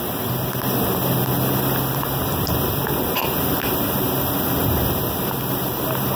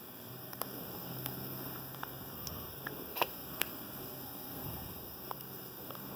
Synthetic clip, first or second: second